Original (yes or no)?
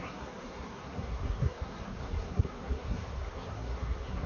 no